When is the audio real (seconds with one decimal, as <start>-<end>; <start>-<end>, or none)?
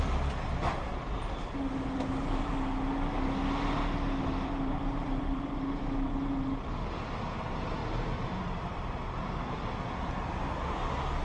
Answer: 0.0-11.2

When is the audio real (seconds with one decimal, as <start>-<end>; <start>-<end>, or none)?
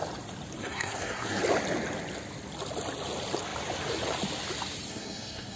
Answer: 0.0-0.6; 1.4-4.9